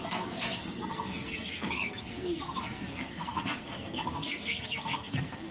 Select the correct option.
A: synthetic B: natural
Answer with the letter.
A